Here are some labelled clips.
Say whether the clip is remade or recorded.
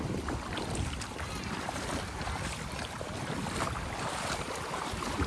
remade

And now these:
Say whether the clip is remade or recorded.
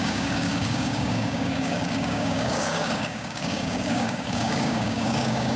remade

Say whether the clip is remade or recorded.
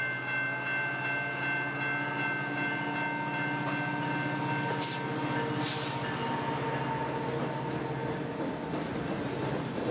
recorded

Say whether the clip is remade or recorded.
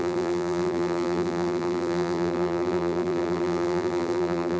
remade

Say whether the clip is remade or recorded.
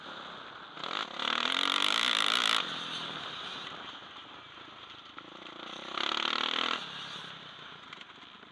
recorded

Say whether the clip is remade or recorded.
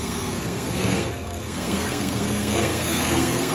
remade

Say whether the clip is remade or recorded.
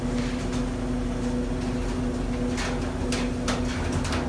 recorded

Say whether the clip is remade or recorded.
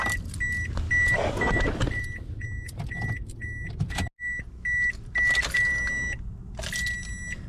recorded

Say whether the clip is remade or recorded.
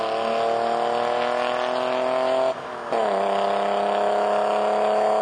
recorded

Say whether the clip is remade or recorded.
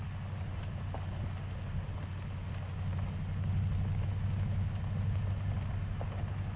recorded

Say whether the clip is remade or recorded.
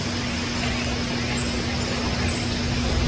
recorded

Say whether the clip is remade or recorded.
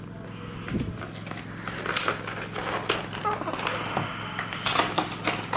recorded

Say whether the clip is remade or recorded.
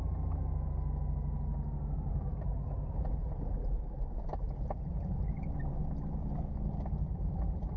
recorded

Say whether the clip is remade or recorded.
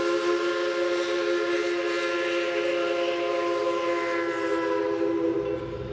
recorded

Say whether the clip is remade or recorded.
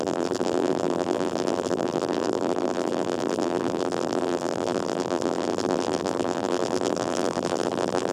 remade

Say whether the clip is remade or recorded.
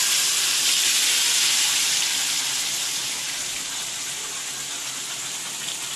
recorded